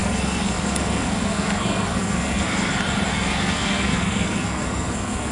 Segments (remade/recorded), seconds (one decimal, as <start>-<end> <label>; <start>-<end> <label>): 0.0-2.7 remade; 2.7-3.1 recorded; 3.1-5.3 remade